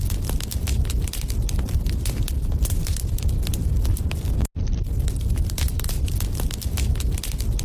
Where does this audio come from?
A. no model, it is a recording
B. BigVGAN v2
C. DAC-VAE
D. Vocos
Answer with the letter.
A